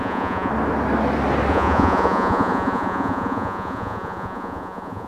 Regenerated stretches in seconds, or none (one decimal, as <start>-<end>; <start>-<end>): 0.0-0.5; 1.5-5.1